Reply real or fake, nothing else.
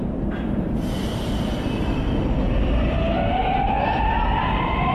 real